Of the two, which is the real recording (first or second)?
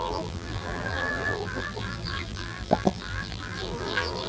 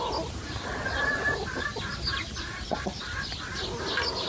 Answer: second